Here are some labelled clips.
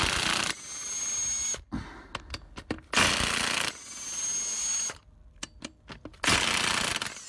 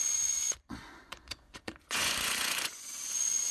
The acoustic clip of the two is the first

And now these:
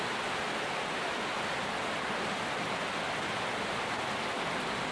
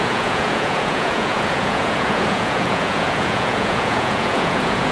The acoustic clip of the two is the first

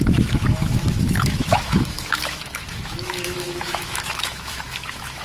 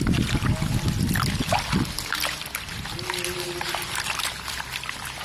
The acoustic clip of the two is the second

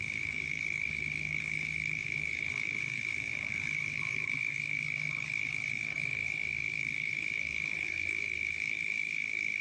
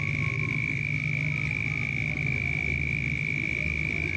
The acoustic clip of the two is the second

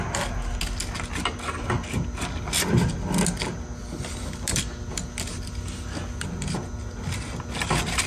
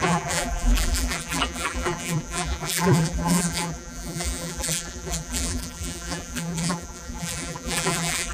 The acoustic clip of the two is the first